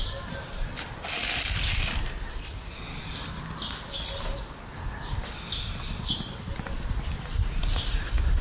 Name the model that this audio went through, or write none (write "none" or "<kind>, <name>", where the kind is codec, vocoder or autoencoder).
none